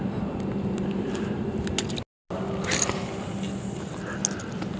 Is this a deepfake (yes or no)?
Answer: no